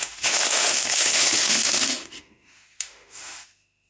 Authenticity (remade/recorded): remade